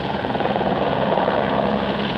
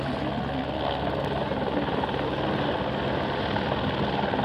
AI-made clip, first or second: first